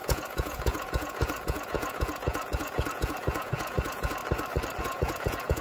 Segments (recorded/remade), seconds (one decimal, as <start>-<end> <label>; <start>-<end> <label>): 0.0-4.2 remade; 4.2-4.8 recorded; 4.8-5.6 remade